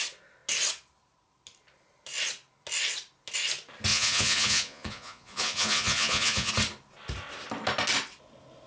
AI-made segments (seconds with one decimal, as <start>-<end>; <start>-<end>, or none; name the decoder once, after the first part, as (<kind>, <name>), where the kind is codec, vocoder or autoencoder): 3.9-6.5 (vocoder, Vocos)